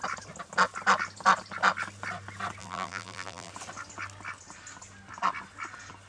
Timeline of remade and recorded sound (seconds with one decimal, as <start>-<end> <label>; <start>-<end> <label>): 0.0-2.6 recorded; 2.6-3.5 remade; 3.5-6.1 recorded